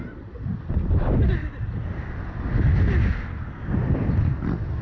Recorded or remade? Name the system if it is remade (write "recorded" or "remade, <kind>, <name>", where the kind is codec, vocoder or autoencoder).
recorded